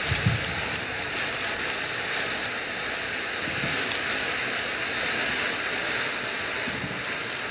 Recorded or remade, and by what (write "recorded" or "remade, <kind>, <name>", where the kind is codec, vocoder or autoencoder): recorded